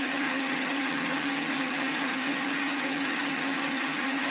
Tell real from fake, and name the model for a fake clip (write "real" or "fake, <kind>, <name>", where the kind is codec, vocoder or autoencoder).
fake, vocoder, HiFi-GAN